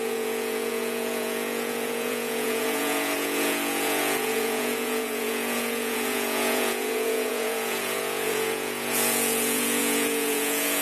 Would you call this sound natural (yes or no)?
no